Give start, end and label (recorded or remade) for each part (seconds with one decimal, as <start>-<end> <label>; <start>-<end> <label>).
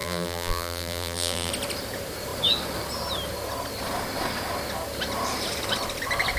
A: 0.0-1.5 remade; 1.5-6.4 recorded